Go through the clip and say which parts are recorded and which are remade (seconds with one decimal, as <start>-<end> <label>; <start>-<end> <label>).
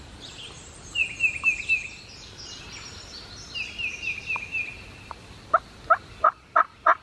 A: 0.0-7.0 recorded